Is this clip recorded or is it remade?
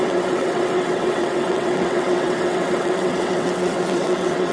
remade